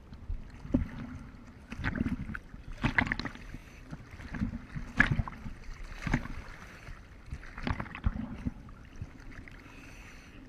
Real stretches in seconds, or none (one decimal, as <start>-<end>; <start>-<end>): 0.0-10.5